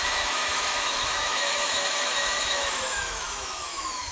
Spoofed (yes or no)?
yes